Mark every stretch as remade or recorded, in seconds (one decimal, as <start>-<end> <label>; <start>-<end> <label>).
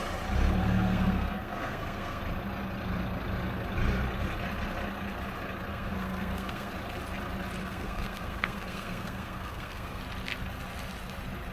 0.0-0.6 recorded; 0.6-2.2 remade; 2.2-5.7 recorded; 5.7-6.7 remade; 6.7-7.6 recorded; 7.6-10.0 remade; 10.0-11.5 recorded